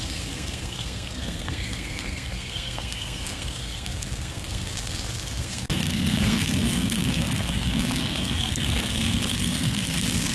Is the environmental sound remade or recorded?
remade